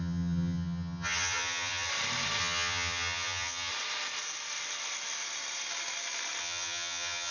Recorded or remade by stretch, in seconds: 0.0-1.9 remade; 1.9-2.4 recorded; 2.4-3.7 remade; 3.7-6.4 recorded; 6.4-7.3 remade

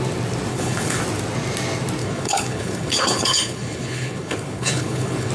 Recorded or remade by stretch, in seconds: 0.0-0.5 recorded; 0.5-1.0 remade; 1.0-2.0 recorded; 2.0-5.3 remade